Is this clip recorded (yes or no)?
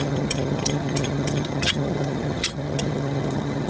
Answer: no